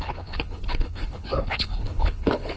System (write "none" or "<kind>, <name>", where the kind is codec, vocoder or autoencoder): codec, HILCodec